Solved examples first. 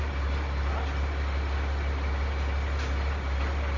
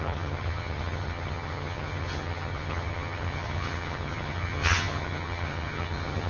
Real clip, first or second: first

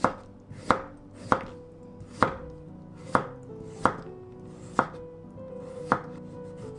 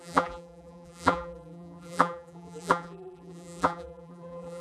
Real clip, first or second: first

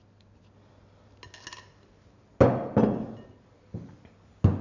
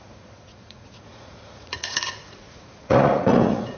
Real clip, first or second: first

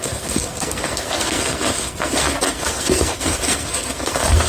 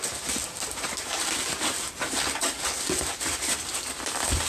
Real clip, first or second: second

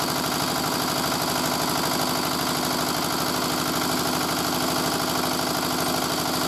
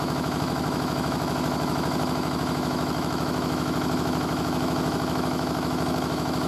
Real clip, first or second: first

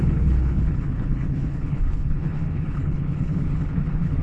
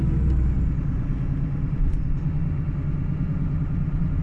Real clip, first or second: second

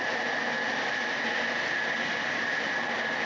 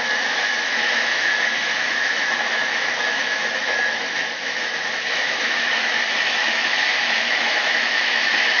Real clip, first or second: first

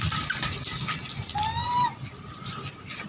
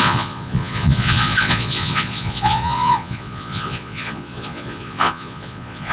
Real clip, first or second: first